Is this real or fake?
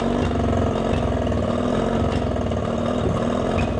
real